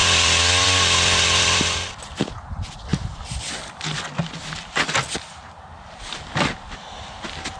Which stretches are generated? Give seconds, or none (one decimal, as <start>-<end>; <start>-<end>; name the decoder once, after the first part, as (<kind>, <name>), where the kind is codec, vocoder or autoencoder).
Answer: 0.0-2.3 (vocoder, BigVGAN v2)